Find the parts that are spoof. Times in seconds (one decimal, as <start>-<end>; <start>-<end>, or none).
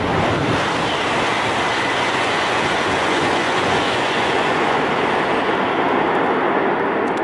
1.7-4.8